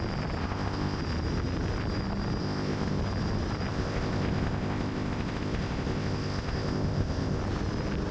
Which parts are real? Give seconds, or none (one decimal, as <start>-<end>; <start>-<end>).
0.0-0.4; 1.0-2.4; 3.0-3.7; 7.4-8.1